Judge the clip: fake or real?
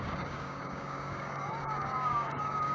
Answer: fake